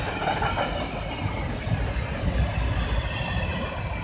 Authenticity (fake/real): real